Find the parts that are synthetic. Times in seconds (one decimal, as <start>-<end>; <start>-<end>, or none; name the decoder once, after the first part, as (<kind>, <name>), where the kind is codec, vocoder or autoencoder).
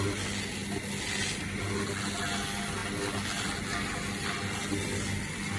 none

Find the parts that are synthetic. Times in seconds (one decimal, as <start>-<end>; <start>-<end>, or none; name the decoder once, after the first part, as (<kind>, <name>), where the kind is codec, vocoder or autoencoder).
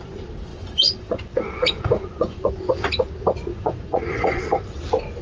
0.5-2.5 (vocoder, Vocos); 3.5-4.4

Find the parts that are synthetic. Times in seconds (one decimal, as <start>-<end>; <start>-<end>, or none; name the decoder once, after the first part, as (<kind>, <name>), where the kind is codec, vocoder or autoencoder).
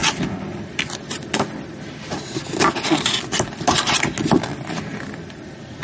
none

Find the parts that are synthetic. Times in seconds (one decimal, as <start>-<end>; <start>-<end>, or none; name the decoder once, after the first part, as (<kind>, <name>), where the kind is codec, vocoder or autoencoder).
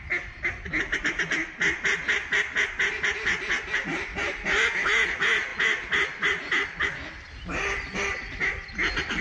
none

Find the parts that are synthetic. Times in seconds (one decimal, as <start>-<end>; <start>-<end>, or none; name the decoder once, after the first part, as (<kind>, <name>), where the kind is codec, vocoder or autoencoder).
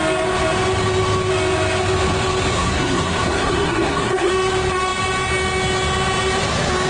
2.5-4.3 (codec, SNAC)